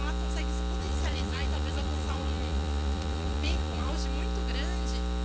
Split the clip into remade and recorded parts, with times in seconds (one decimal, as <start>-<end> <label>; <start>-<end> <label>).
0.0-0.8 recorded; 0.8-3.9 remade; 3.9-5.2 recorded